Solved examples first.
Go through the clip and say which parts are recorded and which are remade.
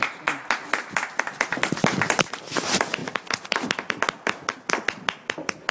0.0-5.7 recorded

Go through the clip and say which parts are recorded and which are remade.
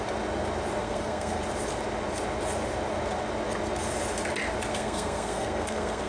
0.0-0.8 recorded; 0.8-1.4 remade; 1.4-4.7 recorded; 4.7-6.1 remade